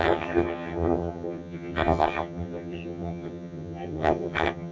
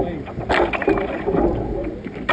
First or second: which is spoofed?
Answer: first